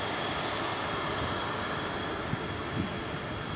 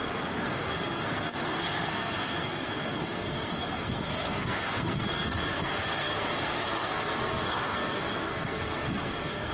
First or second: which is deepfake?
second